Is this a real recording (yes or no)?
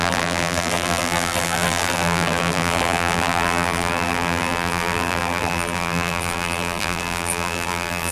no